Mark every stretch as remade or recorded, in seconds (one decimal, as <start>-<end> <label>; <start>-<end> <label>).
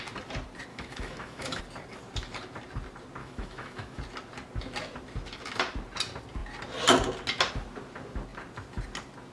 0.0-0.7 recorded; 0.7-1.6 remade; 1.6-3.2 recorded; 3.2-4.0 remade; 4.0-9.3 recorded